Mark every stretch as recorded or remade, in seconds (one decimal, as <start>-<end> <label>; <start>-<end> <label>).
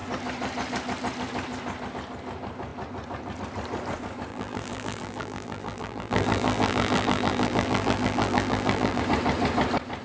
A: 0.0-4.3 recorded; 4.3-9.0 remade; 9.0-10.0 recorded